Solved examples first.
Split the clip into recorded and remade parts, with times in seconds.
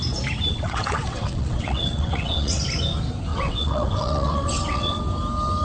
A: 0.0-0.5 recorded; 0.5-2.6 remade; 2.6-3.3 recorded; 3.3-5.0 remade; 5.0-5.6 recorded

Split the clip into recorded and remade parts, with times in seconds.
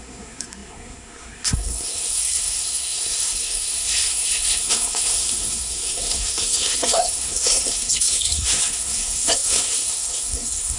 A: 0.0-10.8 remade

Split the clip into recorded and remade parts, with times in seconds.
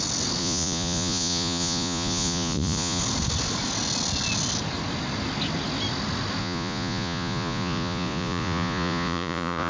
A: 0.0-0.4 recorded; 0.4-3.0 remade; 3.0-6.4 recorded; 6.4-9.7 remade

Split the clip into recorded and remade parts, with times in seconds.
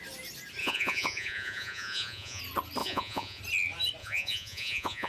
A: 0.0-0.6 recorded; 0.6-2.4 remade; 2.4-2.8 recorded; 2.8-3.4 remade; 3.4-4.0 recorded; 4.0-5.1 remade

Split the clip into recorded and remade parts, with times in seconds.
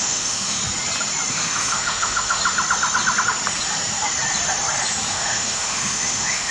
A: 0.0-0.6 remade; 0.6-1.3 recorded; 1.3-2.4 remade; 2.4-5.1 recorded; 5.1-6.5 remade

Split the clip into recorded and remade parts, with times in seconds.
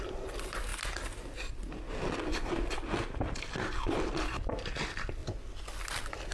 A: 0.0-5.2 remade; 5.2-6.3 recorded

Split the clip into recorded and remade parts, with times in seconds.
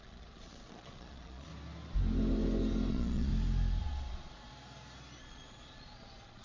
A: 0.0-1.5 remade; 1.5-2.9 recorded; 2.9-3.3 remade; 3.3-3.8 recorded; 3.8-4.5 remade; 4.5-5.2 recorded; 5.2-6.4 remade